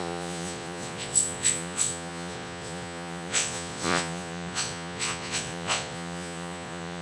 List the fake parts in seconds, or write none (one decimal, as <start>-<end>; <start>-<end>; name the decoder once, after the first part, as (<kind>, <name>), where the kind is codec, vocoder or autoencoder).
0.0-7.0 (vocoder, Vocos)